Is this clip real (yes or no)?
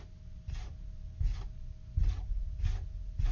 yes